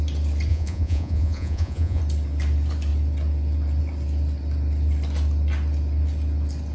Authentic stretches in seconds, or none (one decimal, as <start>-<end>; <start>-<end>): 0.0-0.5; 2.0-6.7